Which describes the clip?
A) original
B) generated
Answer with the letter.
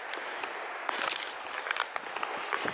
A